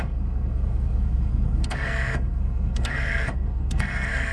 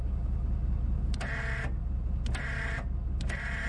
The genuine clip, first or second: second